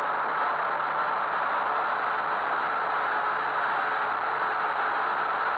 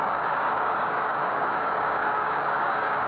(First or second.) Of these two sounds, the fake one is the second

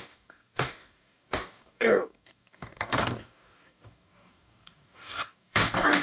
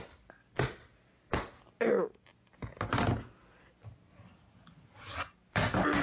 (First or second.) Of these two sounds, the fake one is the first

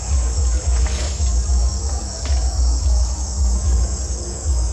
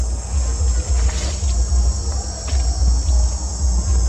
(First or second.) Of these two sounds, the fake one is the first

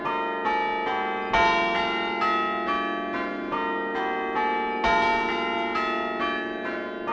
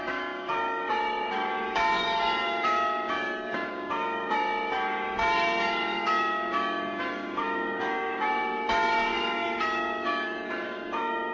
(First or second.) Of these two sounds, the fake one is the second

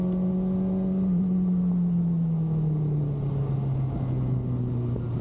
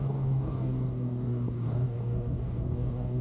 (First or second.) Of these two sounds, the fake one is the second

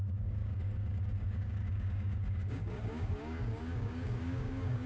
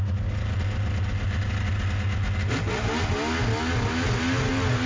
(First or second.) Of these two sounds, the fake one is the first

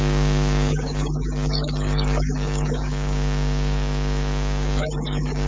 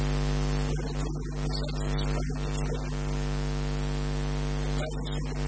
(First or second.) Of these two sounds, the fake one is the first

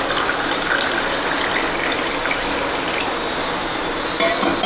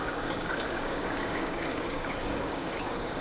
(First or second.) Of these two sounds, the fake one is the second